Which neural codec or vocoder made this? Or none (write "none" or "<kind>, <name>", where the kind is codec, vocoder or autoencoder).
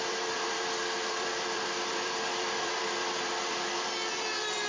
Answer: vocoder, BigVGAN v2